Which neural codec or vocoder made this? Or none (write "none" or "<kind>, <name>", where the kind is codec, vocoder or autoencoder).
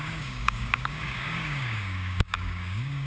codec, DAC